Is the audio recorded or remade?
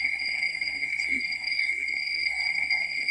remade